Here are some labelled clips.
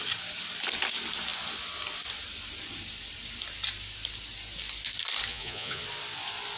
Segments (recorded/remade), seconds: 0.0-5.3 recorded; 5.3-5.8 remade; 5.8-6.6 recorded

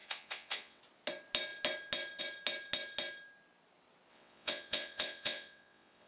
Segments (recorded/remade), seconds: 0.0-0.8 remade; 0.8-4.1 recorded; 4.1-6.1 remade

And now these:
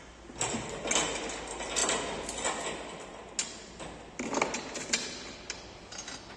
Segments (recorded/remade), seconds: 0.0-6.4 recorded

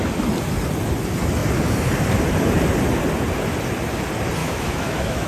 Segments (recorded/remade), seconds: 0.0-4.4 recorded; 4.4-5.3 remade

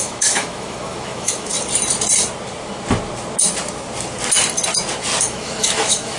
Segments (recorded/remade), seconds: 0.0-1.5 remade; 1.5-5.2 recorded; 5.2-6.2 remade

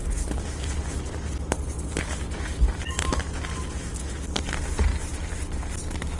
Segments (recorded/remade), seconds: 0.0-3.7 recorded; 3.7-4.9 remade; 4.9-6.2 recorded

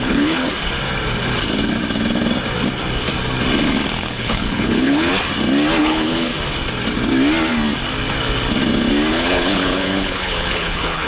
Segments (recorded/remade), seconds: 0.0-0.4 remade; 0.4-4.0 recorded; 4.0-5.1 remade; 5.1-5.8 recorded; 5.8-6.3 remade; 6.3-9.1 recorded; 9.1-11.1 remade

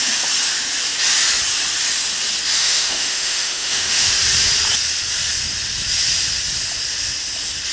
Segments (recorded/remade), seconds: 0.0-2.6 recorded; 2.6-4.1 remade; 4.1-7.7 recorded